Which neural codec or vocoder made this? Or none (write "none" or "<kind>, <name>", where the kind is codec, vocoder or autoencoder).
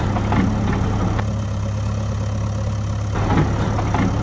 none